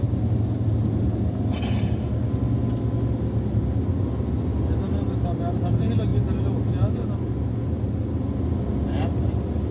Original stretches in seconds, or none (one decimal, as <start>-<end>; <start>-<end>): 0.0-9.7